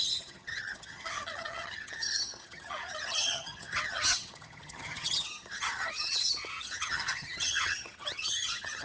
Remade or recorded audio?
remade